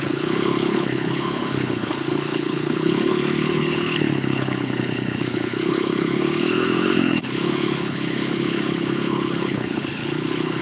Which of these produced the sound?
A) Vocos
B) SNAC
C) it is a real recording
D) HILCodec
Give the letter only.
D